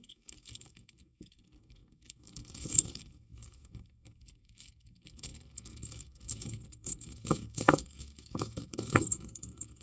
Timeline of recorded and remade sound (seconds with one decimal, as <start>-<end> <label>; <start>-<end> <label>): 0.0-9.8 remade